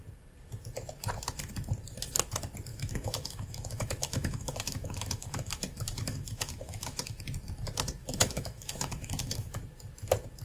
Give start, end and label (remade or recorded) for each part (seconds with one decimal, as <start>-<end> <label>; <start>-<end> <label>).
0.0-2.7 recorded; 2.7-7.2 remade; 7.2-8.0 recorded; 8.0-9.6 remade; 9.6-10.4 recorded